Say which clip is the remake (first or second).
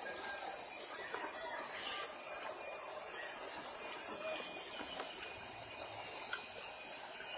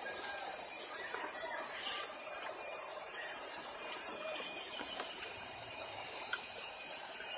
second